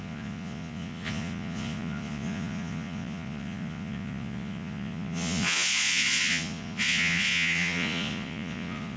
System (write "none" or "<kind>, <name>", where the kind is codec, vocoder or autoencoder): vocoder, Vocos